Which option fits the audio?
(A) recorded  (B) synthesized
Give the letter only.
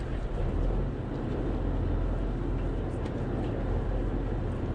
A